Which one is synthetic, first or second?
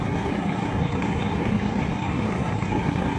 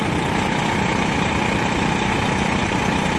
first